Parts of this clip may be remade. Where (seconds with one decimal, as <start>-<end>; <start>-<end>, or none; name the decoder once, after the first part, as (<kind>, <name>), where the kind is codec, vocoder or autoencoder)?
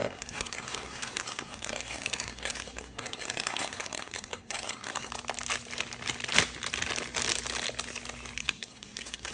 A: 0.0-5.1 (codec, SNAC); 8.4-9.3